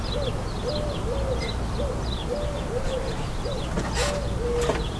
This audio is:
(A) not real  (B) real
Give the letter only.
B